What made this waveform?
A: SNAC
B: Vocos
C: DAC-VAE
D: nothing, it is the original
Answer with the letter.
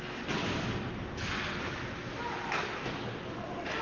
D